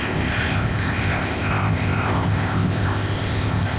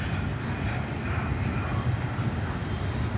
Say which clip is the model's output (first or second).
first